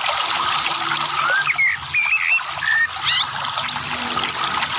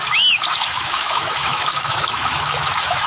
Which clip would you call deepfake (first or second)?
second